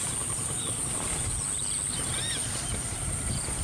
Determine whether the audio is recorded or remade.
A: recorded